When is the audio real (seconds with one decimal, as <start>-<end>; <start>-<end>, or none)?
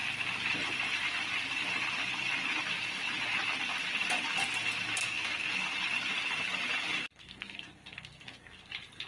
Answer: 0.0-5.0; 5.5-7.0; 8.7-9.1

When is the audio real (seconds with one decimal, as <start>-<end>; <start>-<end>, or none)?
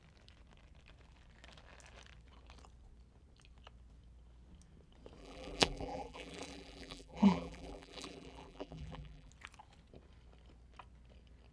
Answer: 0.0-5.2; 9.3-11.5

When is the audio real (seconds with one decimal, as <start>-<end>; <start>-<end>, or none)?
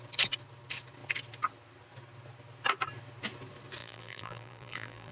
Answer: 0.0-3.8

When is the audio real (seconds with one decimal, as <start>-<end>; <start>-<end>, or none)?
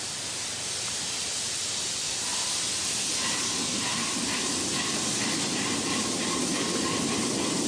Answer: 0.0-7.7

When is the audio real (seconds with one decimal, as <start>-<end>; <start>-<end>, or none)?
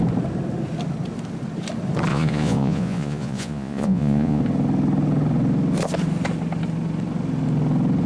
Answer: 0.0-2.1; 4.4-8.1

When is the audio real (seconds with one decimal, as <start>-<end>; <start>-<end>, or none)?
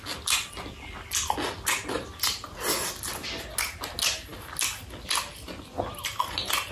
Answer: 0.0-6.7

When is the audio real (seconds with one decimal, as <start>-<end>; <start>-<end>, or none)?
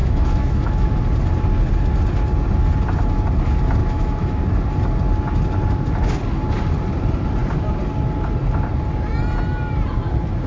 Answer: 0.9-3.8; 4.4-10.5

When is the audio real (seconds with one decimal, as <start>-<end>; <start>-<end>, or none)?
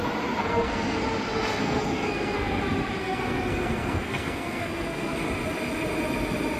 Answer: 0.0-0.4; 1.0-1.6; 2.6-3.0; 5.2-6.6